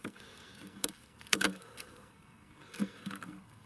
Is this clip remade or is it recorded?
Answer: remade